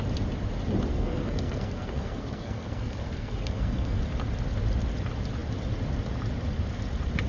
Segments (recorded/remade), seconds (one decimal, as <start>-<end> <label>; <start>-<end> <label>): 0.0-0.9 recorded; 0.9-4.0 remade; 4.0-7.3 recorded